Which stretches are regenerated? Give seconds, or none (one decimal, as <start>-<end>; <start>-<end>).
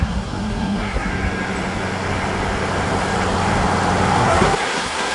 0.0-1.1; 4.2-5.1